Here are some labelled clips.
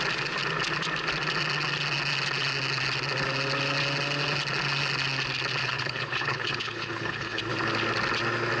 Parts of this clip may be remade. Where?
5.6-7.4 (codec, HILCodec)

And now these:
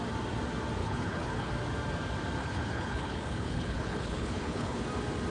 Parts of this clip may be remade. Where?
0.8-1.5 (codec, HILCodec); 2.4-4.8

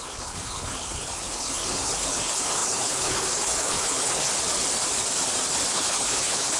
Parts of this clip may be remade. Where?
0.0-4.3 (codec, HILCodec); 5.7-6.6

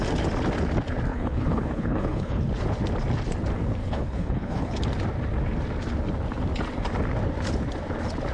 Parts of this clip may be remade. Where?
1.1-2.5 (codec, HILCodec); 3.8-4.8